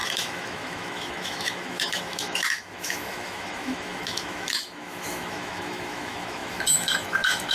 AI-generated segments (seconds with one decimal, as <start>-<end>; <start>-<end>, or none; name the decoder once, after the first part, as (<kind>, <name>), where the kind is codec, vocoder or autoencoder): 0.0-7.5 (autoencoder, DAC-VAE)